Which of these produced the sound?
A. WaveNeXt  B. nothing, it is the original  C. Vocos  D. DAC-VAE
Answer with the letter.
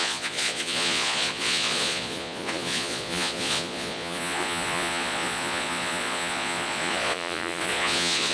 C